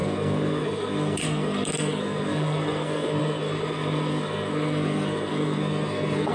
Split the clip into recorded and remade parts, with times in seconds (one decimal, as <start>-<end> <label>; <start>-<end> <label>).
0.0-6.3 remade